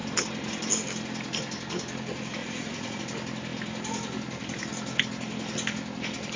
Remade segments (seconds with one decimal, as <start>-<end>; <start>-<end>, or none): 2.4-3.0